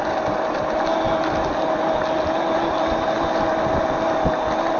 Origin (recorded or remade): recorded